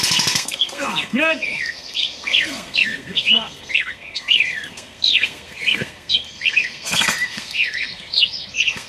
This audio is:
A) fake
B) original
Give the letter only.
A